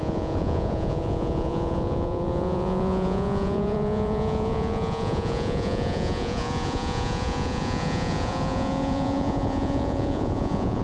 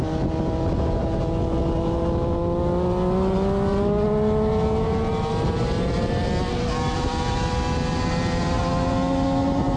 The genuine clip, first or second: second